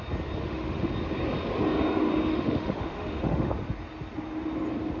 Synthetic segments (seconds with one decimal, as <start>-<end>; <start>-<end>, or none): 0.4-0.9; 2.3-3.5